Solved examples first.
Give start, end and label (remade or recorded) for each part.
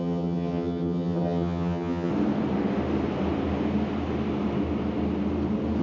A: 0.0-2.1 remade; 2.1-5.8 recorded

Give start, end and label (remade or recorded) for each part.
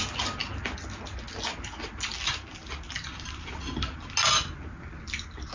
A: 0.0-5.5 recorded